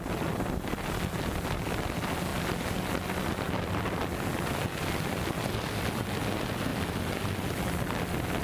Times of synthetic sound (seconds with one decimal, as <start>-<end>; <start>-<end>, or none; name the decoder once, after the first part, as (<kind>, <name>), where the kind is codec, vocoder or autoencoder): none